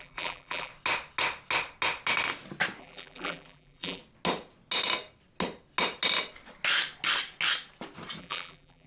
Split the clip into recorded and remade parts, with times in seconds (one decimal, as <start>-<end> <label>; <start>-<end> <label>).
0.0-0.7 remade; 0.7-2.8 recorded; 2.8-4.0 remade; 4.0-8.2 recorded; 8.2-8.9 remade